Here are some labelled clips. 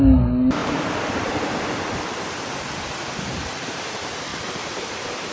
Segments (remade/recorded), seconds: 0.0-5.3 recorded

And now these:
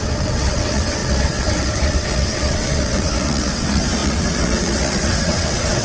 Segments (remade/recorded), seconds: 0.0-5.8 remade

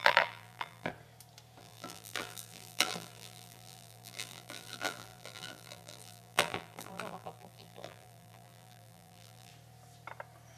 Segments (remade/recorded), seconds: 0.0-0.9 remade; 0.9-1.6 recorded; 1.6-9.5 remade; 9.5-10.6 recorded